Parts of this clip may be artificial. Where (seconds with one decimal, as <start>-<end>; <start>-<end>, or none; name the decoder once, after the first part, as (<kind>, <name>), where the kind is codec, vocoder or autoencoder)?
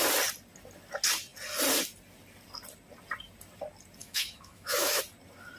4.0-5.0 (autoencoder, DAC-VAE)